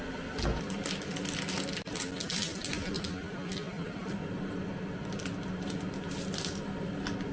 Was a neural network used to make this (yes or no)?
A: no